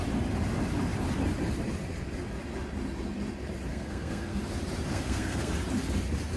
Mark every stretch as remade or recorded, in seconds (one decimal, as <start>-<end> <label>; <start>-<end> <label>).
0.0-3.7 recorded; 3.7-4.4 remade; 4.4-4.9 recorded; 4.9-5.5 remade; 5.5-6.4 recorded